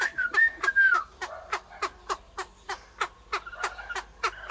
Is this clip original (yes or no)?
yes